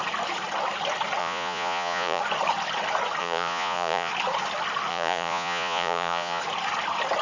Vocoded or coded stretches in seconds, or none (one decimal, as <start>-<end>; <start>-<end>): 1.2-2.2; 3.2-4.1; 4.9-6.4